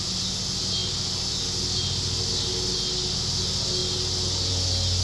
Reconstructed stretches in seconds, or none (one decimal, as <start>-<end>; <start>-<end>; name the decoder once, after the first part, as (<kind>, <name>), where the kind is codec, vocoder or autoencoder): none